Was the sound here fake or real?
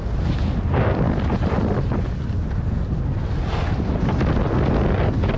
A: real